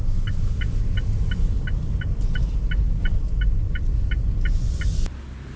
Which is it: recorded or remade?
recorded